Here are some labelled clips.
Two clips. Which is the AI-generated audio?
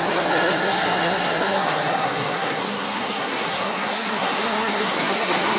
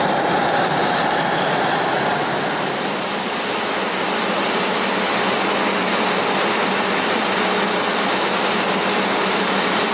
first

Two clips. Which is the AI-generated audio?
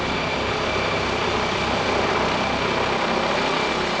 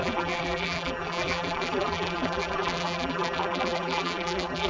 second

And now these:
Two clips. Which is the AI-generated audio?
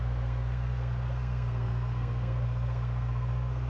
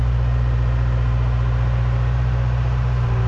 first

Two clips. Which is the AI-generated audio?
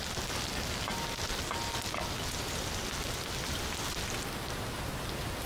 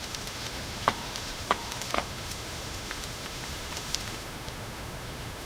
second